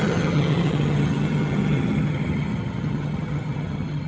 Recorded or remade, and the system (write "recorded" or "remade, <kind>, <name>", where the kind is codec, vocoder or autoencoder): remade, vocoder, HiFi-GAN